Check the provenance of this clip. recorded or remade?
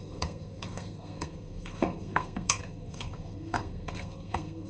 remade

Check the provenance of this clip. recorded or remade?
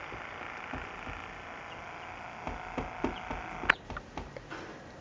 recorded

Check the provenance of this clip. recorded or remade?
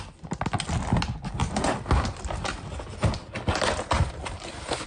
recorded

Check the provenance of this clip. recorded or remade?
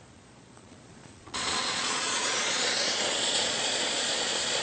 remade